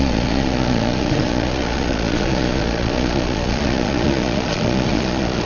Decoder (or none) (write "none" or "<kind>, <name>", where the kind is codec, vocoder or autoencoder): vocoder, Vocos